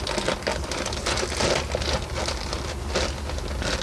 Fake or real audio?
real